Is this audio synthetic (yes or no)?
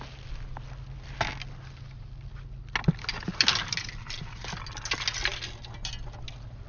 no